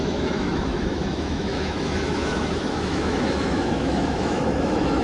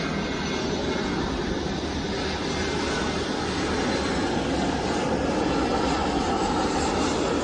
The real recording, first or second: second